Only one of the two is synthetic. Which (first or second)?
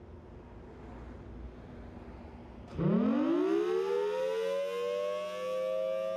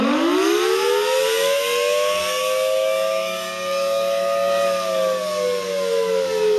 second